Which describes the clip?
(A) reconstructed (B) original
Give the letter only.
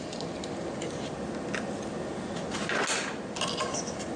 B